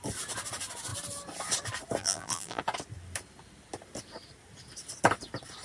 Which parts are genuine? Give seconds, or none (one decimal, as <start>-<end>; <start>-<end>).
0.0-2.0; 2.6-5.6